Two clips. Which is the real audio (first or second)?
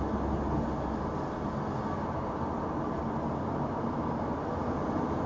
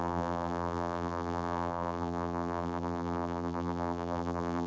first